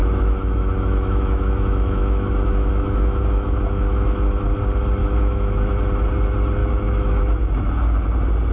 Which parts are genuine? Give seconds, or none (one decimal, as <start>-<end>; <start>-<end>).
4.6-5.0; 5.8-6.6; 7.7-8.5